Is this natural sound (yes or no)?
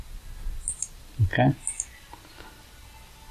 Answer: yes